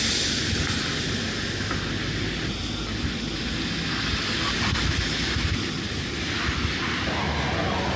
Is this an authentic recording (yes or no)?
yes